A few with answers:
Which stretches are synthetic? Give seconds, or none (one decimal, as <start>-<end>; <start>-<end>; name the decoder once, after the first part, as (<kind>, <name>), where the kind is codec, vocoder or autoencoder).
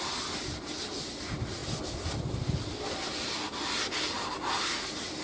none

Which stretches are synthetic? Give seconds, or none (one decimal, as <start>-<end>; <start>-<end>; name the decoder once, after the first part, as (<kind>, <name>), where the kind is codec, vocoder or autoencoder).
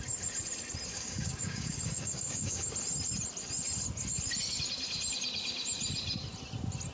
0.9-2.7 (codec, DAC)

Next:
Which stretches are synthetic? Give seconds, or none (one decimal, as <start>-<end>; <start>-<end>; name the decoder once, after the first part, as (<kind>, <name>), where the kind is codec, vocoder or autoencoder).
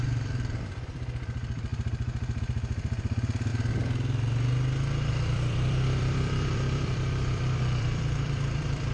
0.0-3.5 (vocoder, BigVGAN v2); 5.1-8.9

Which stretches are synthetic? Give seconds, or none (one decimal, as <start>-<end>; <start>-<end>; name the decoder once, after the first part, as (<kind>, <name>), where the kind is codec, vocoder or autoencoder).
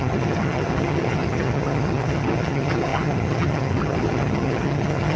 0.0-5.2 (vocoder, HiFi-GAN)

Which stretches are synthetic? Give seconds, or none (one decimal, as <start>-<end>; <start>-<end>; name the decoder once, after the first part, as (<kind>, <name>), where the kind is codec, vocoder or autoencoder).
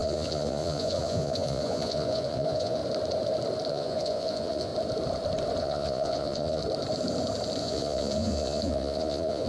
0.0-2.8 (vocoder, Vocos); 3.7-4.7; 5.6-6.6; 7.6-9.5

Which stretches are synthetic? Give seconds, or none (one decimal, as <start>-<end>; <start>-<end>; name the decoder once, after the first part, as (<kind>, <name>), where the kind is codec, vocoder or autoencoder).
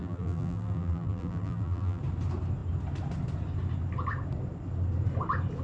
0.0-2.0 (vocoder, BigVGAN v2)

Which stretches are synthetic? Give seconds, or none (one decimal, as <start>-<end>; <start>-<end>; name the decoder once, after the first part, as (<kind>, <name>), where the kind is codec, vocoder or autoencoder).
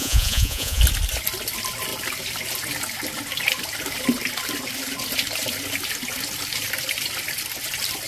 0.0-0.8 (vocoder, Vocos)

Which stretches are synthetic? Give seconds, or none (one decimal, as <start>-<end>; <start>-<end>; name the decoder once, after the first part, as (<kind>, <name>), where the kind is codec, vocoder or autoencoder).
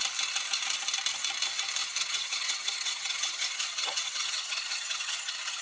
1.8-5.6 (vocoder, HiFi-GAN)